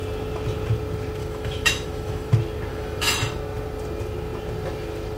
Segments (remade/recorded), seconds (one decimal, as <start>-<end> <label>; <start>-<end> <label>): 0.0-1.2 recorded; 1.2-2.3 remade; 2.3-2.7 recorded; 2.7-3.2 remade; 3.2-5.2 recorded